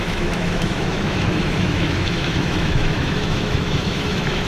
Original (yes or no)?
no